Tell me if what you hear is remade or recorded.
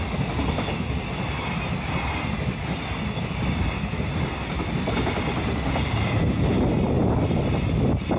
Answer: recorded